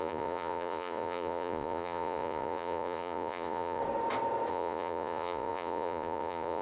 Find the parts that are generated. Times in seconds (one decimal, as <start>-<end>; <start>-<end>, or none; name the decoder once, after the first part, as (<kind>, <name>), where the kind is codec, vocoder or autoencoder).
0.0-3.8 (vocoder, Vocos); 4.5-6.6